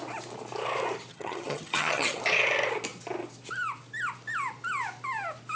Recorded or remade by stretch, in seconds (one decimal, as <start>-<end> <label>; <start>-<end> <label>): 0.0-1.1 recorded; 1.1-2.2 remade; 2.2-5.5 recorded